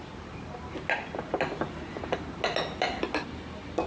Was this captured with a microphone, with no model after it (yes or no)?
yes